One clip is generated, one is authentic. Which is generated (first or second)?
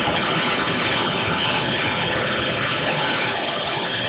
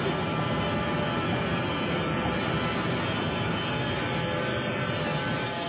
first